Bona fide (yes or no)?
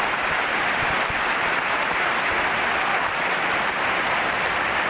yes